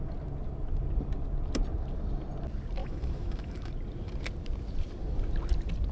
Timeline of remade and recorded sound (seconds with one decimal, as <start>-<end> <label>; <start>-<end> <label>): 0.0-2.8 recorded; 2.8-3.7 remade; 3.7-5.9 recorded